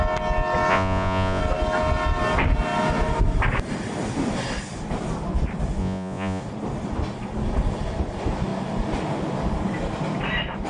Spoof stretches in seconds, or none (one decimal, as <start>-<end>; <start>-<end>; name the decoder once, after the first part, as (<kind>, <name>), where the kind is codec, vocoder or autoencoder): 0.7-1.4 (vocoder, Vocos); 5.8-6.4